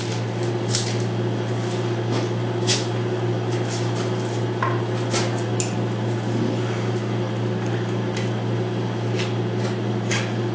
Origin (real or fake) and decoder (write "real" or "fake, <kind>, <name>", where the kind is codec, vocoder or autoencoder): real